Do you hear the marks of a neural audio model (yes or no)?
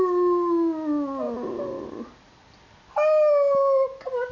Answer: no